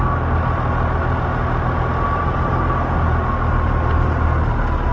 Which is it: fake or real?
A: real